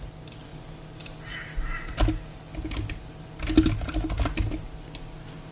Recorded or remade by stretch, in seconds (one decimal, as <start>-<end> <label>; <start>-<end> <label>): 0.0-5.5 recorded